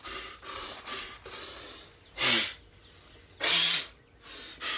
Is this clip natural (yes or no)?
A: yes